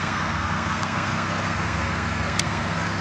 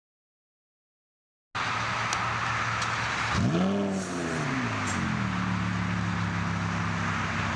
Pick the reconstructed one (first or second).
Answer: first